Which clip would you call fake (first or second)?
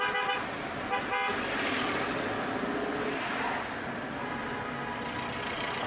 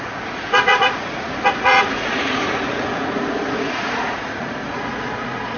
second